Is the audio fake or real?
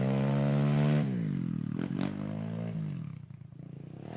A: real